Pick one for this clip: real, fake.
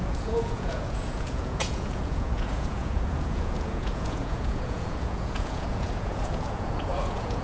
fake